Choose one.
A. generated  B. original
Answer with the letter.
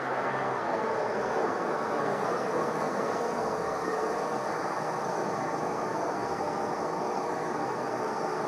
A